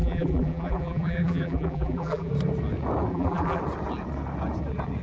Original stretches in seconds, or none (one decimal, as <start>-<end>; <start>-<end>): 2.3-3.1; 3.6-5.0